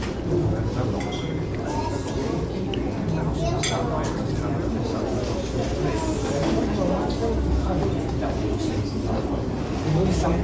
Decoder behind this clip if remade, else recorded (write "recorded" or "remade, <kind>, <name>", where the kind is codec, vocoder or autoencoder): recorded